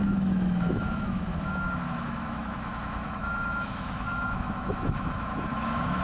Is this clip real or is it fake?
fake